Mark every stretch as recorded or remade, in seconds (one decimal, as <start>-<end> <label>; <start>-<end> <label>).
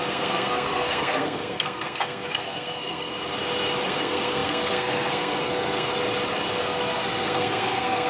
0.0-3.1 remade; 3.1-3.9 recorded; 3.9-5.9 remade; 5.9-6.6 recorded; 6.6-8.1 remade